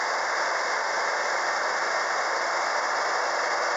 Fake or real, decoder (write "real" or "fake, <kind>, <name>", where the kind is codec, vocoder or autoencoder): real